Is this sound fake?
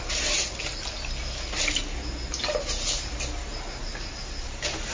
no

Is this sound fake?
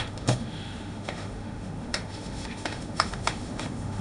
yes